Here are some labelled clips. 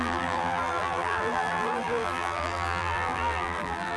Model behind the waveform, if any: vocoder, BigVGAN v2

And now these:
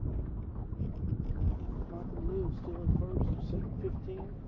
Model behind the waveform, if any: none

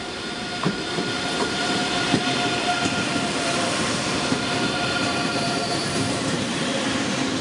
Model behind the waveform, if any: vocoder, BigVGAN v2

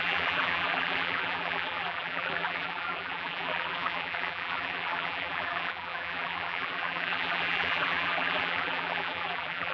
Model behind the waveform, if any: vocoder, BigVGAN v2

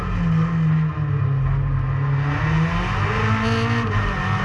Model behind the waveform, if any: none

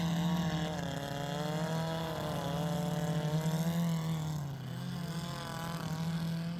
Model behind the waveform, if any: none